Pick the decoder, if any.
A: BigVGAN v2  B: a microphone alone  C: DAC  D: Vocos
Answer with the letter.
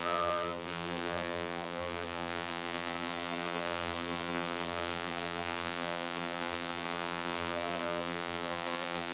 A